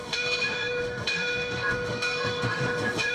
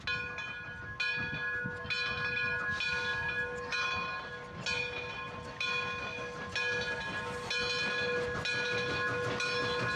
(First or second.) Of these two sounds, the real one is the second